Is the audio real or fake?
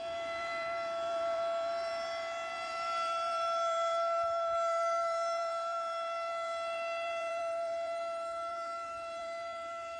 fake